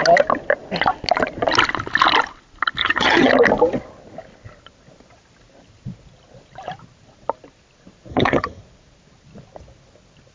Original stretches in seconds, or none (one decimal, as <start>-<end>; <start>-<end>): 0.0-2.8; 3.3-8.1; 8.6-10.3